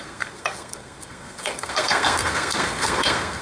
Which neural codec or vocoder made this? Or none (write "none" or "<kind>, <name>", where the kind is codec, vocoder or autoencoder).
codec, SNAC